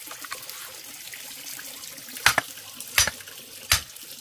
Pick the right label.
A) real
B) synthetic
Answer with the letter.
A